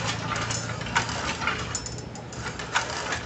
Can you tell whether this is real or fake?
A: real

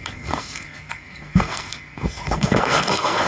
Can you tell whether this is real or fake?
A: fake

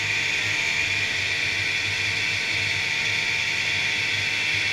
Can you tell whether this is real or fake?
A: real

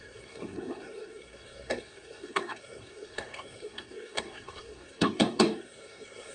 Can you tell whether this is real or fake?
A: fake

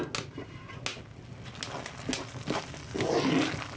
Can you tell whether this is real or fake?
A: real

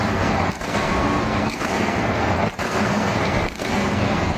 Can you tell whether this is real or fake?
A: fake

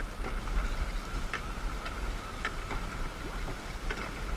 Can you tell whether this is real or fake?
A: real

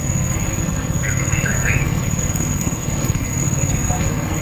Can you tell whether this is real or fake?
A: fake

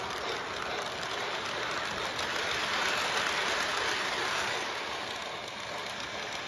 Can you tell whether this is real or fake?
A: real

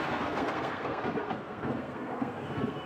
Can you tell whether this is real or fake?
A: fake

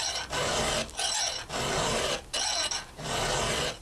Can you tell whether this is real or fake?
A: real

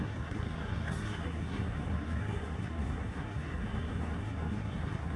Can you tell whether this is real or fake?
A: fake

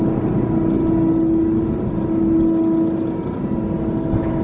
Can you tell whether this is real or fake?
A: real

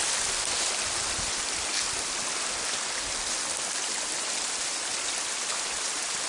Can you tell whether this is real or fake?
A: real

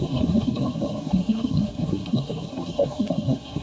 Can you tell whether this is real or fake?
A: fake